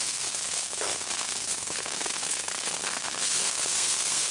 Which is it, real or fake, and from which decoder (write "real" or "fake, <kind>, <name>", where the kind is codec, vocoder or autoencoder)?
fake, codec, SNAC